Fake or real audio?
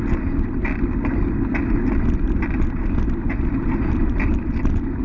real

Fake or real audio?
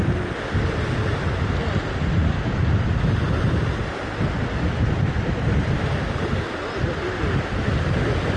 real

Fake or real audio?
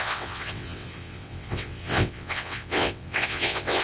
fake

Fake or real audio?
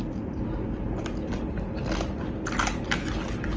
real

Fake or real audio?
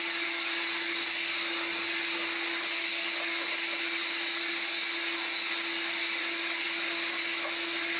real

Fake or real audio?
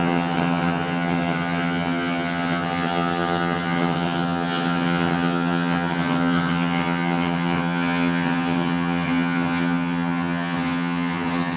fake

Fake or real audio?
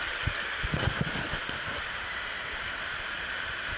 real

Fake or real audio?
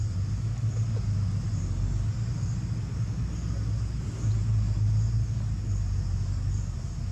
real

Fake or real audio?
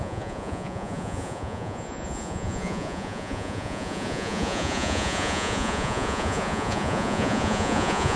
fake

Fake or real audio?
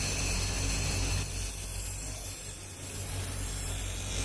real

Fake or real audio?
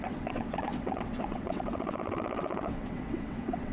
fake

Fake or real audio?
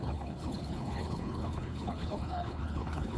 fake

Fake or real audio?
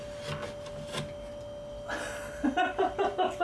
real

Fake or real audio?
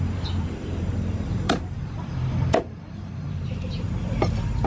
fake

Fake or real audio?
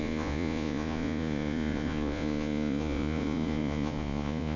fake